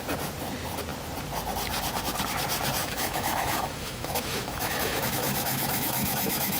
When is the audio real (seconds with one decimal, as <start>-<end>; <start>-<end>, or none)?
0.0-2.8